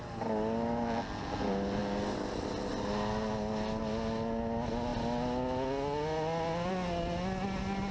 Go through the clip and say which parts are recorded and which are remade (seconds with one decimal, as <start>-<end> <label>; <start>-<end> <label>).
0.0-7.9 recorded